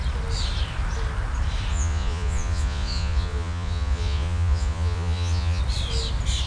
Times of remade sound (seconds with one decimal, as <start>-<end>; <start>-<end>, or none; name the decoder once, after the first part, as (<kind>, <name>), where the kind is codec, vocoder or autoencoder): 1.7-5.6 (vocoder, Vocos)

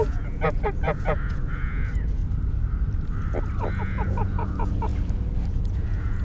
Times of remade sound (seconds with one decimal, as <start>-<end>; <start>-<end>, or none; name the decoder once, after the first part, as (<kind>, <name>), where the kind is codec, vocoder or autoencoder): 0.0-2.2 (vocoder, Vocos); 3.8-4.9; 5.5-6.2

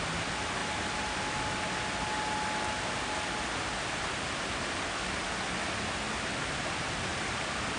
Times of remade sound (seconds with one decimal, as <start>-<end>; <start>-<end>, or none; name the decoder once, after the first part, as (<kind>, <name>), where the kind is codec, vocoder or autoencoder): none